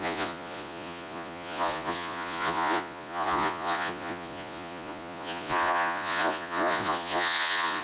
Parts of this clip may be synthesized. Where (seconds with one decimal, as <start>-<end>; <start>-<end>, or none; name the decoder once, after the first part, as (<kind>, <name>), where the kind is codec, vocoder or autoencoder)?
0.0-7.8 (vocoder, Vocos)